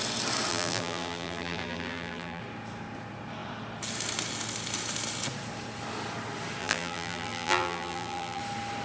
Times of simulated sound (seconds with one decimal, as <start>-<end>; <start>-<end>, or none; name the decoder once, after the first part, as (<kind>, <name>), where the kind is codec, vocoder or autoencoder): 0.5-2.4 (vocoder, BigVGAN v2); 6.6-8.4